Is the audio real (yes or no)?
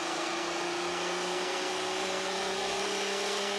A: no